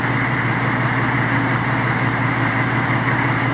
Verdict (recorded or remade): remade